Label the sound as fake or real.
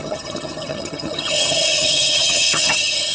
fake